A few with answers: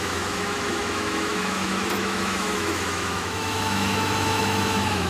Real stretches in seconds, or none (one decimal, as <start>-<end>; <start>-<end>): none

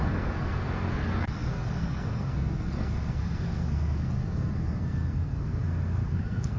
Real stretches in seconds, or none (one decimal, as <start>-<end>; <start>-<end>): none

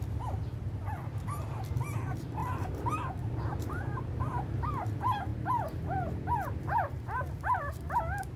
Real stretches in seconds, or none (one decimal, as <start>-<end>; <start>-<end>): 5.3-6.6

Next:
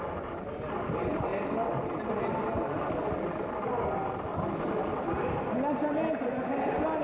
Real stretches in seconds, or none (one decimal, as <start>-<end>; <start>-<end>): 0.0-7.0

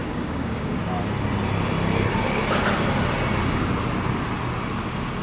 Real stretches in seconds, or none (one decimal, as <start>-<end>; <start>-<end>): 0.8-5.2

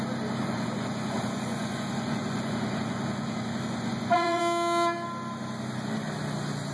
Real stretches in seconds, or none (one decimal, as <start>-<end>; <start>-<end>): 0.0-0.4; 4.4-6.7